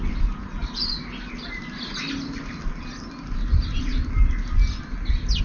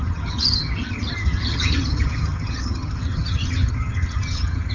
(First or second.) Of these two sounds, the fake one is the second